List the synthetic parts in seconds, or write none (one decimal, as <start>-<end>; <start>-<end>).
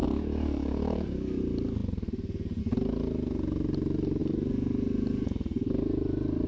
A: 0.0-1.4